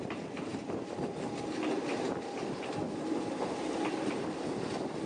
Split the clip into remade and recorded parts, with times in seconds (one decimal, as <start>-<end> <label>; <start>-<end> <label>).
0.0-5.1 recorded